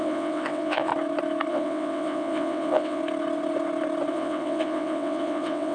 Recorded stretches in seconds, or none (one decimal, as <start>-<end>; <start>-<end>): 0.9-1.5; 3.0-4.1